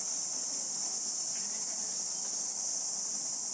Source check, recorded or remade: remade